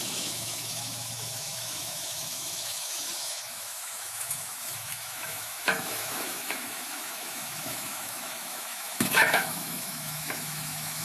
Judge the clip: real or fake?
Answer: fake